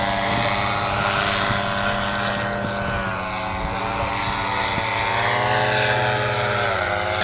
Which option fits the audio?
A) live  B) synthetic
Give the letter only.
A